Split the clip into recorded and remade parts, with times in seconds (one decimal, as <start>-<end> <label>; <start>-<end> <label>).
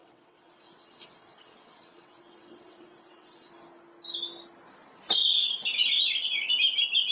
0.0-3.5 remade; 3.5-7.1 recorded